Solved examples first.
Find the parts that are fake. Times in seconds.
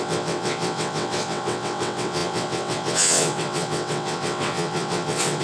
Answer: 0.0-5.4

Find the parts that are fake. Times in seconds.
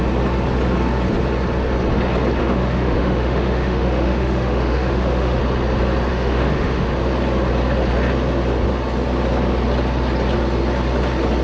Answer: 2.4-5.4; 6.1-6.9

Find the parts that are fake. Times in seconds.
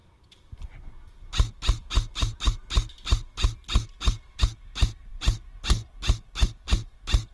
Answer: none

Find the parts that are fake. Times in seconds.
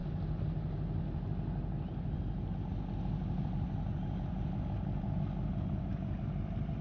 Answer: none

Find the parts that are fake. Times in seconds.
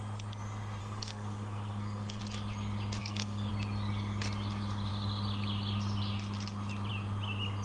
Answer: 0.8-2.2; 3.0-3.5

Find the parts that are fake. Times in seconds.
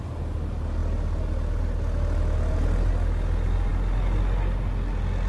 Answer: none